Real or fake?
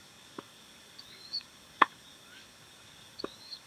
fake